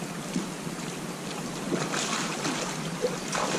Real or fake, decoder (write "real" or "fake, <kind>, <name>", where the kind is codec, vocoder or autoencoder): real